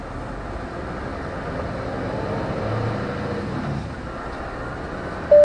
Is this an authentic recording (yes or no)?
yes